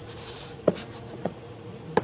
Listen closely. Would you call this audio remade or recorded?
remade